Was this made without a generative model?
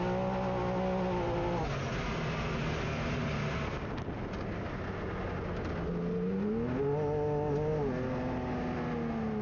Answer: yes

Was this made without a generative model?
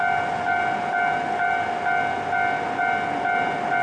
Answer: yes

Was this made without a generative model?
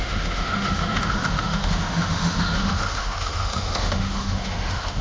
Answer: no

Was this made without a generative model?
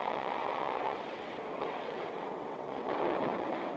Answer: no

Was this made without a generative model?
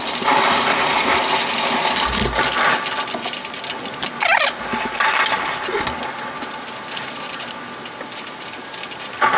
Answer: yes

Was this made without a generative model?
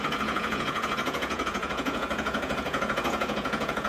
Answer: no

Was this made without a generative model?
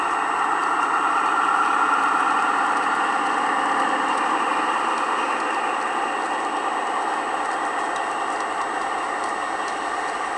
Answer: yes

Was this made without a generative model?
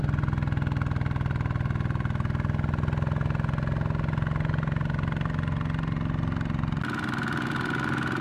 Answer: yes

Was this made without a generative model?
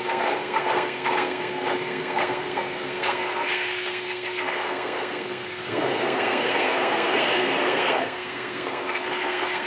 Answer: no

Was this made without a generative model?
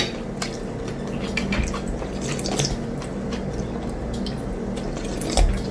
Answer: yes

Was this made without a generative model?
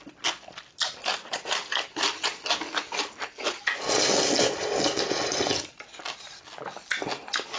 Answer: yes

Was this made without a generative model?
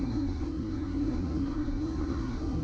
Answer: no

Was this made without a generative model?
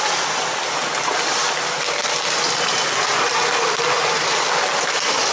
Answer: yes